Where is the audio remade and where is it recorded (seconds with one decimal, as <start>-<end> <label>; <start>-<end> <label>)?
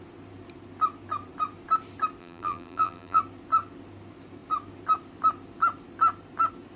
0.0-2.2 recorded; 2.2-3.2 remade; 3.2-6.8 recorded